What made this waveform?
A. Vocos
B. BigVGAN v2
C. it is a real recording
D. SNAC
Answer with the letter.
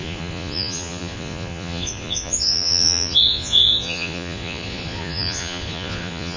A